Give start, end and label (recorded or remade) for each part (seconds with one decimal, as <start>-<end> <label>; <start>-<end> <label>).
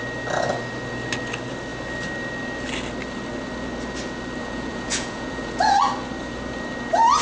0.0-4.4 recorded; 4.4-5.8 remade; 5.8-7.2 recorded